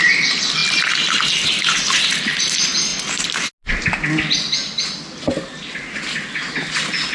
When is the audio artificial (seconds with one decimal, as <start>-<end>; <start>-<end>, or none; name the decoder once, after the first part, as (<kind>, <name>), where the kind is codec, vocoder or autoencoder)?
none